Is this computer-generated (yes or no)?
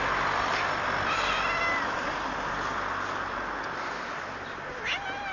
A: no